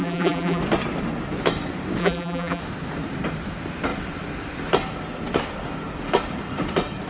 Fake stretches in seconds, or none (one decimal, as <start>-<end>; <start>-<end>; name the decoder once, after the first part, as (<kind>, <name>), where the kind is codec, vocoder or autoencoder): 0.0-0.6 (vocoder, BigVGAN v2); 2.0-2.6